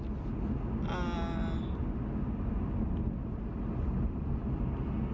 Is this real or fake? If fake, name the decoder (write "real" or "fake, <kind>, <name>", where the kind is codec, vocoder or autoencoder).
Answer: real